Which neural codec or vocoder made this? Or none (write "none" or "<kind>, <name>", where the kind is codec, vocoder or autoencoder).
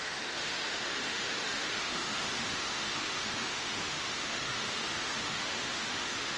autoencoder, DAC-VAE